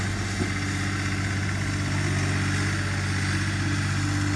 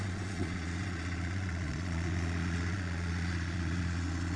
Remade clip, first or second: second